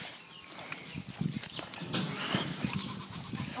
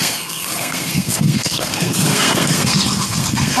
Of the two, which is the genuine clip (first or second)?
first